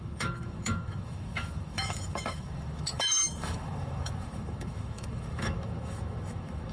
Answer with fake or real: fake